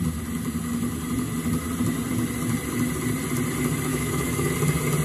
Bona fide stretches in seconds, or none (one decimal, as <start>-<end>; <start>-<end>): 0.0-3.9; 4.5-5.0